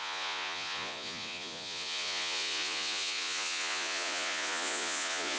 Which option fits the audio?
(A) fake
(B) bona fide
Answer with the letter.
A